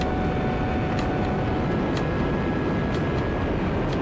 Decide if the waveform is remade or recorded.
recorded